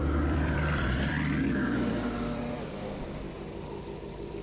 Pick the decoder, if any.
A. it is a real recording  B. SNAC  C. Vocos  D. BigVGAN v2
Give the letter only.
D